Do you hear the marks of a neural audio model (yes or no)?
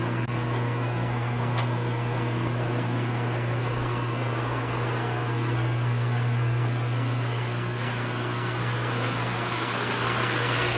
yes